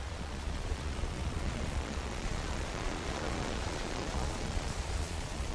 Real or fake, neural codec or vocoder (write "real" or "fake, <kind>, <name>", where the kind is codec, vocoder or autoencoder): fake, vocoder, Vocos